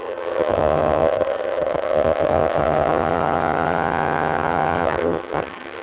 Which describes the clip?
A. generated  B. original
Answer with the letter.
A